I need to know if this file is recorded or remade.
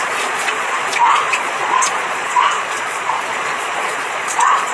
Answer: remade